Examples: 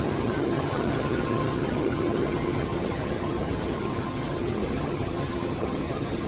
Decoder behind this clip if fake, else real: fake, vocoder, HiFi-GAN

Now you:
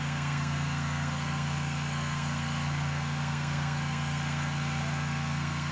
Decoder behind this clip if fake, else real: fake, codec, SNAC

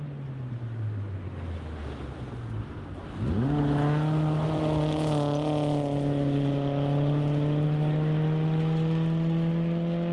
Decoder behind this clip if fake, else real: real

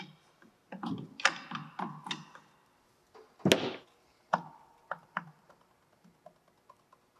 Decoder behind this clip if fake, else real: real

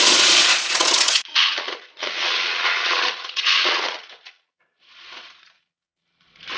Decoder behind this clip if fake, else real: fake, vocoder, Vocos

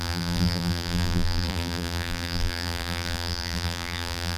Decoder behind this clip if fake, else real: fake, vocoder, BigVGAN v2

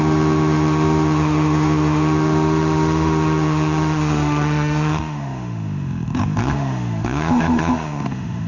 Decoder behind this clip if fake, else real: fake, autoencoder, DAC-VAE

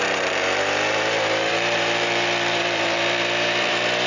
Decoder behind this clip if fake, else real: fake, vocoder, BigVGAN v2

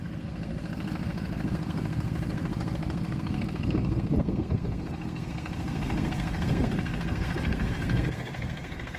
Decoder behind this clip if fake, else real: fake, codec, SNAC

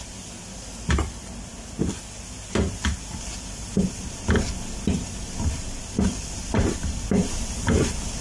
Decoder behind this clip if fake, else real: real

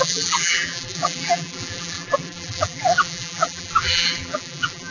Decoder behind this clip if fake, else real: fake, vocoder, BigVGAN v2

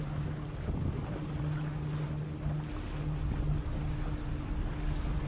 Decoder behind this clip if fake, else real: real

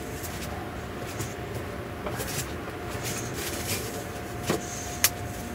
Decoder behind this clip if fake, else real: real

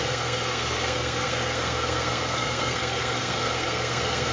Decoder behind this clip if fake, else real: fake, codec, SNAC